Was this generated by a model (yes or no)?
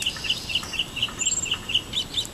no